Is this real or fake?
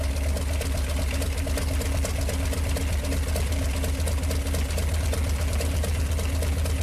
real